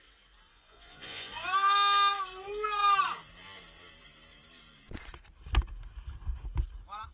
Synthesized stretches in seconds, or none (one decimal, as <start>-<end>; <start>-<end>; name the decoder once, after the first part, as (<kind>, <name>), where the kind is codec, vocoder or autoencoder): 0.5-1.3 (vocoder, Vocos)

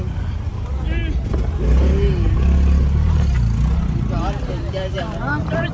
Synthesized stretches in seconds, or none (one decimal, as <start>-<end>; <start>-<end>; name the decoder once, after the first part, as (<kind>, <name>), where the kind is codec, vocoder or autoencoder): 0.0-1.0 (vocoder, BigVGAN v2); 4.4-5.7

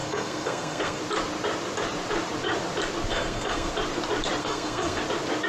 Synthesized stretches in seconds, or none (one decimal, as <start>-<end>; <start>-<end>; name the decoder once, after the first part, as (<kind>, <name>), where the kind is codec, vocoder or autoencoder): 0.0-1.0 (codec, SNAC); 3.1-3.7; 4.4-5.0

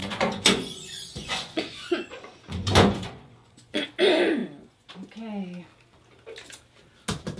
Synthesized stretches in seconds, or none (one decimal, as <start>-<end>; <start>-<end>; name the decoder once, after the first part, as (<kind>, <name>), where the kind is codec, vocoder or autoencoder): 0.0-3.9 (vocoder, Vocos); 4.4-4.9

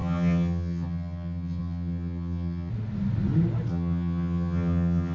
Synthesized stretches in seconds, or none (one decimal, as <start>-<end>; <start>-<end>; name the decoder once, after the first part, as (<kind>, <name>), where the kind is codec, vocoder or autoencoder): 0.0-2.7 (vocoder, HiFi-GAN); 3.7-5.1

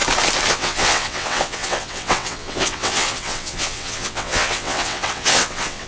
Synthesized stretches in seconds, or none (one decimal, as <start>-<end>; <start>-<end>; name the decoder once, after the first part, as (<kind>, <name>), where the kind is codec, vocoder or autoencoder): 0.5-5.9 (vocoder, WaveNeXt)

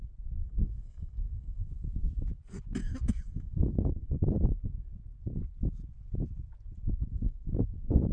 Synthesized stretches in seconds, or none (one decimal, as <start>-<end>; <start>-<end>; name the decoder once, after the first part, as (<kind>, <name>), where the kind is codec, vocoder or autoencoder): 0.4-1.7 (codec, SNAC); 2.8-4.2; 7.1-7.6